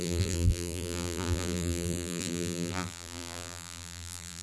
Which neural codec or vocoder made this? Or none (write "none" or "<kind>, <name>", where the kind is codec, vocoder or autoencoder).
vocoder, BigVGAN v2